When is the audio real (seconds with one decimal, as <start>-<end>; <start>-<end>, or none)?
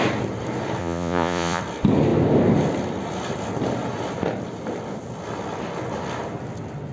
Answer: 0.0-0.8; 1.6-6.9